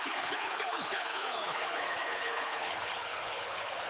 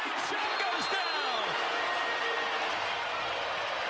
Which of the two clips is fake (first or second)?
first